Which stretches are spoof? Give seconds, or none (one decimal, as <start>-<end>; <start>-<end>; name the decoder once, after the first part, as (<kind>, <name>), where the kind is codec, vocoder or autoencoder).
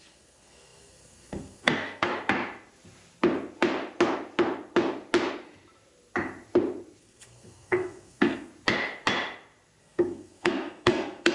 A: 0.0-2.1 (codec, SNAC); 7.0-8.5; 9.8-11.3